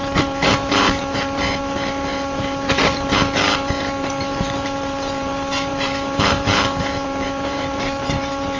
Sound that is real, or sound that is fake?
fake